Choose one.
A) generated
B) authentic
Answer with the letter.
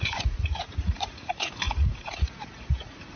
A